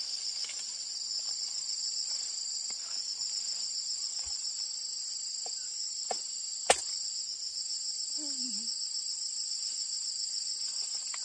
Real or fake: real